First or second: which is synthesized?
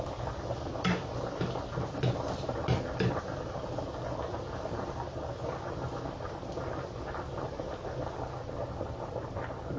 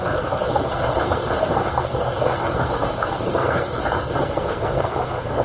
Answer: second